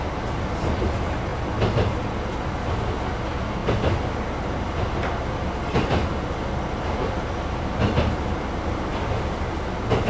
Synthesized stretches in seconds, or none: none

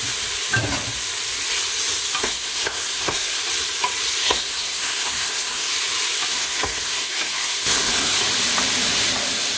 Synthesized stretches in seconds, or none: 2.2-3.4 (codec, SNAC); 4.2-5.7; 6.3-8.2

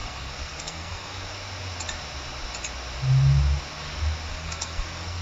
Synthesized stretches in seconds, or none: 0.0-1.3 (codec, SNAC); 4.3-5.2

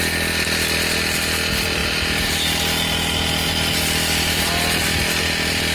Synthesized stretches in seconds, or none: none